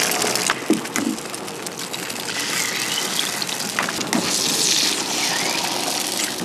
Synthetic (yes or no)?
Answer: no